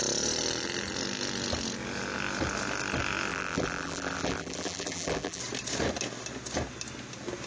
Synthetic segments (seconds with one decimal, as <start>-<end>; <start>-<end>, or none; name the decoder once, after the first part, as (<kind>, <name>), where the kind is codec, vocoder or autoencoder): 3.3-5.4 (vocoder, BigVGAN v2)